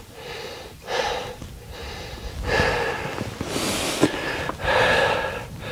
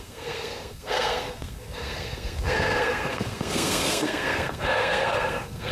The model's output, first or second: second